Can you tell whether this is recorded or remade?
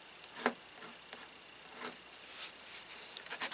recorded